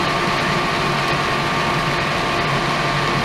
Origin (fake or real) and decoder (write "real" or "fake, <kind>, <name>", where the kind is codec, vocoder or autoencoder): real